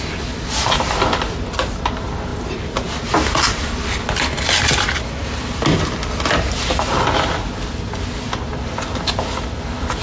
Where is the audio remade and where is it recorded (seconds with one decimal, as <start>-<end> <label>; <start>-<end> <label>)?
0.0-10.0 recorded